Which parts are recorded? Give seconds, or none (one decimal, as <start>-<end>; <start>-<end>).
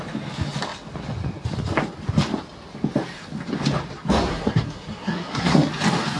0.0-4.3; 5.7-6.2